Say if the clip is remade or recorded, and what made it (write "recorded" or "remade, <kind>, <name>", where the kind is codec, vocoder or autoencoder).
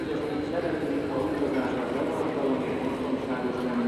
recorded